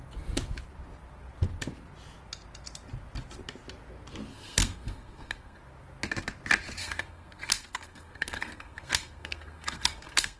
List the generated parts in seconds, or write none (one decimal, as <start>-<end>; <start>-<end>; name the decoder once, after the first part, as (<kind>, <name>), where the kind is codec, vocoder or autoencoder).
4.3-5.6 (codec, SNAC); 6.8-10.4